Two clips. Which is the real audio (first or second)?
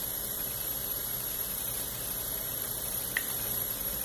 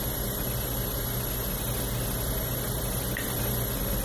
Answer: second